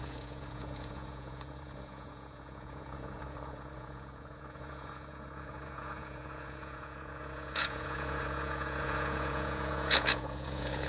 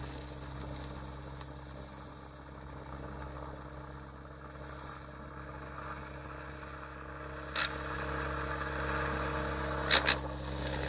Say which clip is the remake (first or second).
first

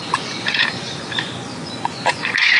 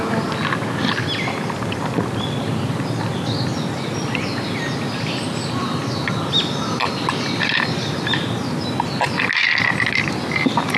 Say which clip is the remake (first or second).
first